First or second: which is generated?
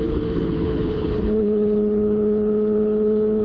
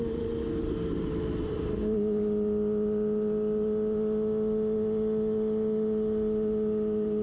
first